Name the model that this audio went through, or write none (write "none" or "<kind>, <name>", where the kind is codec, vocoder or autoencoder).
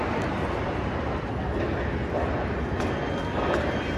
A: none